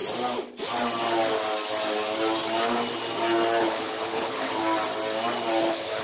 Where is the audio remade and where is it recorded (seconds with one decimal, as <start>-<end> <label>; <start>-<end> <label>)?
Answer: 0.0-3.6 recorded; 3.6-4.6 remade; 4.6-5.6 recorded; 5.6-6.0 remade